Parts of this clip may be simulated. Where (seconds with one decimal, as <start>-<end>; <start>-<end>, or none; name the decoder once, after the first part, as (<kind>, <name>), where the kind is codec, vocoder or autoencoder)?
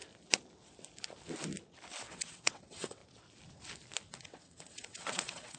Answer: 2.1-3.0 (vocoder, WaveNeXt); 4.2-5.6